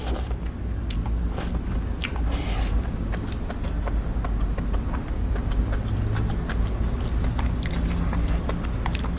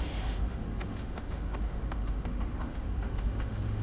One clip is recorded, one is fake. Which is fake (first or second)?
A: second